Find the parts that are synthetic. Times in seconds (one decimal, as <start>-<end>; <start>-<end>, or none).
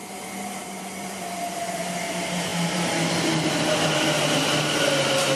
0.0-1.9; 2.5-3.5